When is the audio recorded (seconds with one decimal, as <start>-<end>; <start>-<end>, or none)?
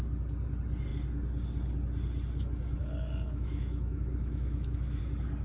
0.0-2.8; 5.0-5.4